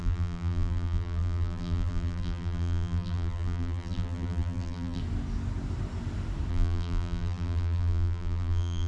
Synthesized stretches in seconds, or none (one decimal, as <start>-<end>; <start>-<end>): 0.0-5.0; 6.5-8.9